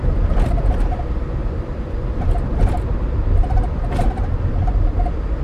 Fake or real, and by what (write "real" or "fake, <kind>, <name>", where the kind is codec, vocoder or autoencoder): fake, vocoder, BigVGAN v2